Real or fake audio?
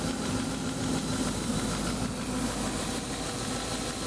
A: real